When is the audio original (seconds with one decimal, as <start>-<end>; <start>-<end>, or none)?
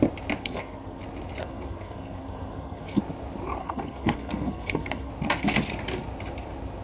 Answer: 0.0-0.4; 1.0-1.4; 3.0-3.6; 5.1-6.8